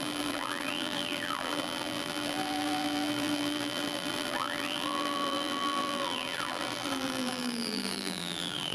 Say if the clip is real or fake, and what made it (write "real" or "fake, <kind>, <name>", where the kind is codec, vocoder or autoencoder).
fake, vocoder, BigVGAN v2